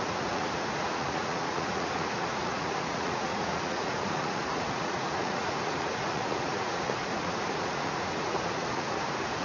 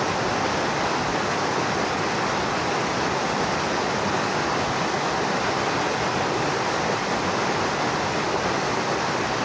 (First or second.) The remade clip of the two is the first